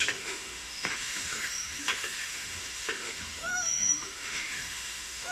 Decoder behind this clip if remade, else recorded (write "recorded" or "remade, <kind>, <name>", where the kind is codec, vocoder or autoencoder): remade, autoencoder, DAC-VAE